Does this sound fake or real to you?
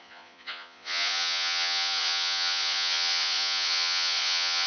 fake